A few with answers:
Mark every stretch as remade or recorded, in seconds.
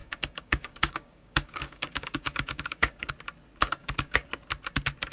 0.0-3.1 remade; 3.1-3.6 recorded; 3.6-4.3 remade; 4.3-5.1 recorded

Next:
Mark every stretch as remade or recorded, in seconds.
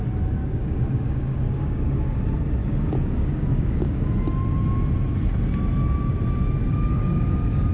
0.0-0.4 recorded; 0.4-2.2 remade; 2.2-2.6 recorded; 2.6-4.1 remade; 4.1-6.7 recorded; 6.7-7.7 remade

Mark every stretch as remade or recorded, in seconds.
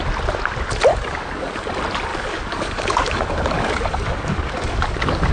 0.0-0.9 recorded; 0.9-1.7 remade; 1.7-2.1 recorded; 2.1-5.3 remade